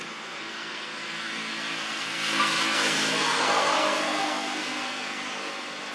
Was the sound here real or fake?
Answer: fake